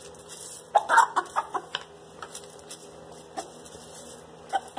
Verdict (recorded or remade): recorded